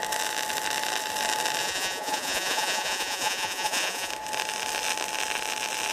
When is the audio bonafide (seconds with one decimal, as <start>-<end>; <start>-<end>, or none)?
0.0-1.6; 4.1-5.9